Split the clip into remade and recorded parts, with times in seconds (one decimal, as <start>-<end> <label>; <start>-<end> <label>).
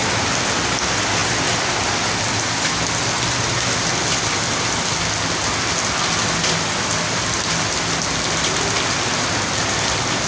0.0-10.3 recorded